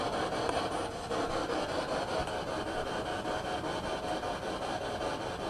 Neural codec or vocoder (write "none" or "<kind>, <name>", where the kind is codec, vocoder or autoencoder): none